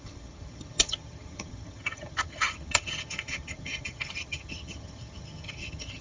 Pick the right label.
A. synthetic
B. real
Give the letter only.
A